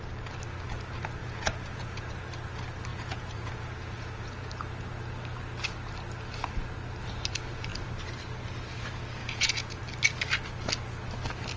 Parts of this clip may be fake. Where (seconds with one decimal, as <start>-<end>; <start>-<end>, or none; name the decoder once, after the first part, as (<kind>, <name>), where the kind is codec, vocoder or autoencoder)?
1.2-2.1 (vocoder, Vocos); 2.9-4.4; 9.2-9.8